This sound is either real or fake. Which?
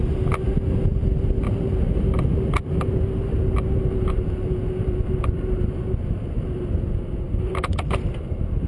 real